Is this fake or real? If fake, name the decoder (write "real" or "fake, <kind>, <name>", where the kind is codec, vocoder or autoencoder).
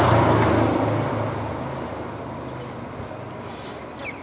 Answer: real